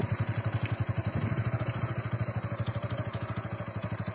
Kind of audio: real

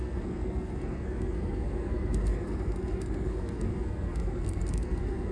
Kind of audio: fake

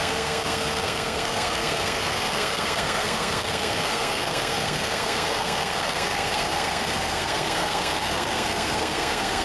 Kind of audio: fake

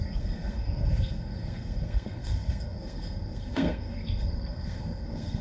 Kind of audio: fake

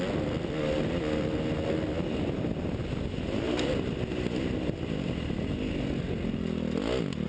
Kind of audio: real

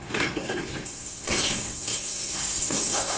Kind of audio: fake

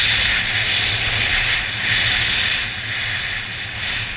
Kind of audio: real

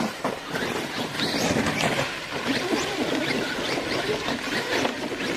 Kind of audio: real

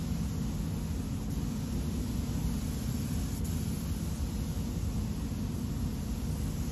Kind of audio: real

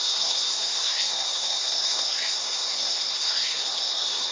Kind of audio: fake